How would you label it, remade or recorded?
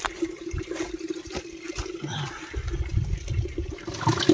recorded